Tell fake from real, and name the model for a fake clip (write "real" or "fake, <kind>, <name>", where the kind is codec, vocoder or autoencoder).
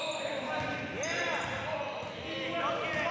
real